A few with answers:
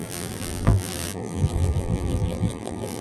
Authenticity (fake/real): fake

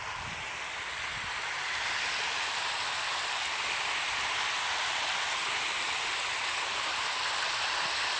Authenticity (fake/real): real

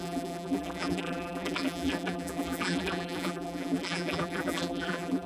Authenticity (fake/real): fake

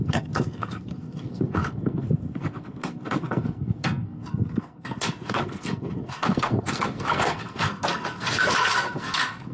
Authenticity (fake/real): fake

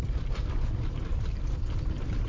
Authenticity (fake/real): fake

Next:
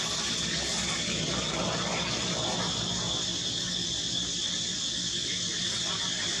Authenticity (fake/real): real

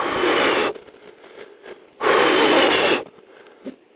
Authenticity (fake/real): real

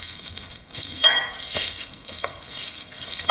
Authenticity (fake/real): fake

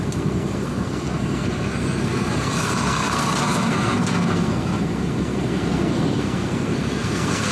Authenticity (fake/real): fake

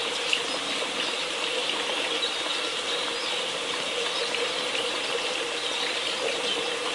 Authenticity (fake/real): real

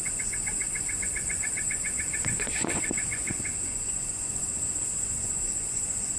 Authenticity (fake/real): fake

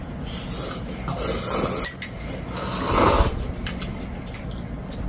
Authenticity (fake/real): real